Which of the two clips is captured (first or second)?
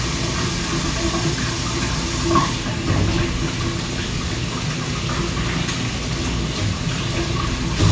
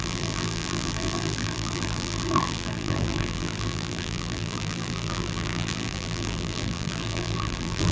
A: first